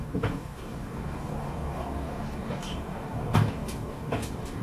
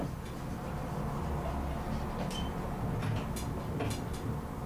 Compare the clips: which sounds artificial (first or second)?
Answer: first